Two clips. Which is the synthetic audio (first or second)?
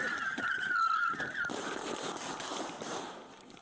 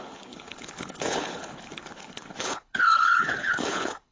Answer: second